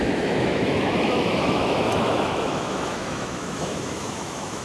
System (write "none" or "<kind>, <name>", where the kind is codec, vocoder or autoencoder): autoencoder, DAC-VAE